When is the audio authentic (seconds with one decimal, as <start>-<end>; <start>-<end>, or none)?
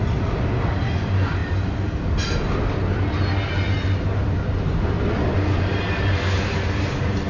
0.0-7.3